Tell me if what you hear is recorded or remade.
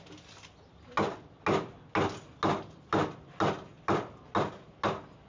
recorded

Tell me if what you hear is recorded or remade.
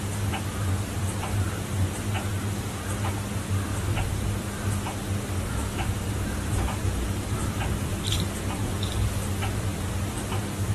remade